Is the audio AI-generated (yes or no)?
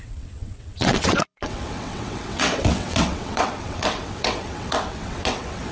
yes